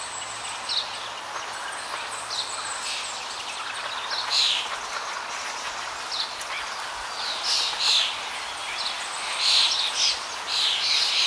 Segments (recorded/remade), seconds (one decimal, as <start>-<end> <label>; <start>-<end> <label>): 0.0-11.3 recorded